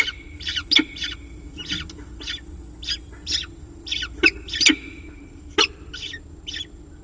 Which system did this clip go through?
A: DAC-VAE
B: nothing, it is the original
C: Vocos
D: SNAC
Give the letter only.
B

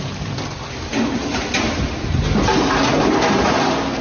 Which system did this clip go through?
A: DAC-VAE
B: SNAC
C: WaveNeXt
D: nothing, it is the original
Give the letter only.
D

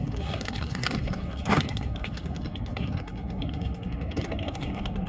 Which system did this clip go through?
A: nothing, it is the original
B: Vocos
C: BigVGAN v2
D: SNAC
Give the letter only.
D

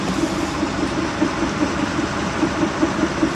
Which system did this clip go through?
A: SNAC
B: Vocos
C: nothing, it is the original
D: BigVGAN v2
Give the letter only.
C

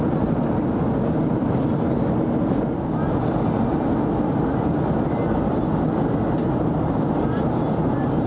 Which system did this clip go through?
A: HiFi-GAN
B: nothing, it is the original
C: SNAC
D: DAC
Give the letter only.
B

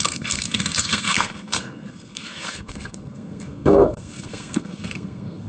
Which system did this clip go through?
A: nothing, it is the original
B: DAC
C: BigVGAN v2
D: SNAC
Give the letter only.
D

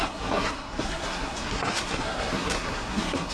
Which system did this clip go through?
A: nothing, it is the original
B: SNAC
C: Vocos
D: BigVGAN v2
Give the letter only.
B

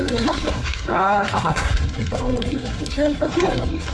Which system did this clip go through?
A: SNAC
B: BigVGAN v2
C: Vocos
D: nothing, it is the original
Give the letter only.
A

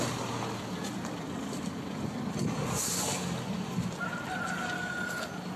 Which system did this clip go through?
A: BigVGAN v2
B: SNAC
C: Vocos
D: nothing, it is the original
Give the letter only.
D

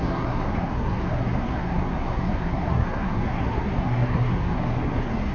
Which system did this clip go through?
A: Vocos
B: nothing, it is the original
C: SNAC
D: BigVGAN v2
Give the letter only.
C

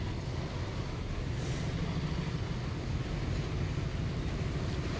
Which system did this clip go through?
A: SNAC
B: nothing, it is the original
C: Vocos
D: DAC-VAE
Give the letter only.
B